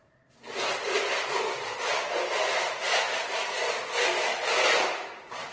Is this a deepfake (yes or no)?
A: no